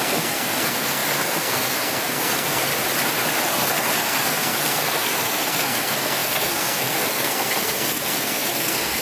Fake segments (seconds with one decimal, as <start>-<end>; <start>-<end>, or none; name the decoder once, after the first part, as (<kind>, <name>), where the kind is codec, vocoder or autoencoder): 0.0-2.7 (codec, SNAC); 3.5-9.0